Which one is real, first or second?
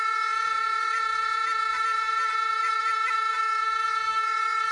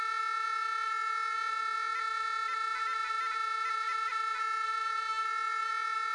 second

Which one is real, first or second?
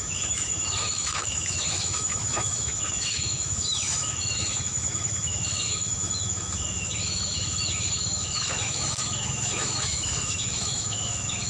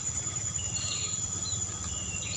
second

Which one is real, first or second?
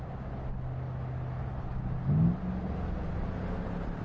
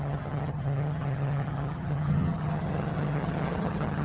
first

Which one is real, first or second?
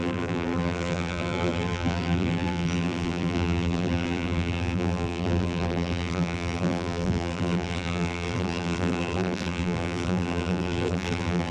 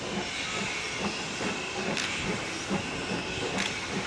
second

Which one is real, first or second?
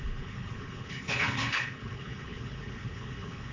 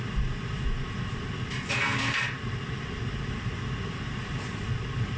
second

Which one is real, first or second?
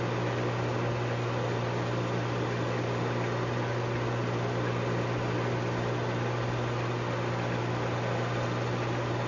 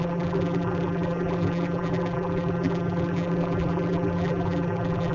first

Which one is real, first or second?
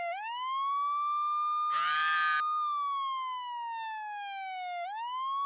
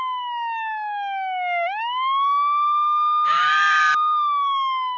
first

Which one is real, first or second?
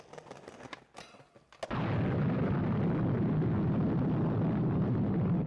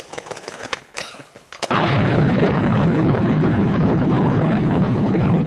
first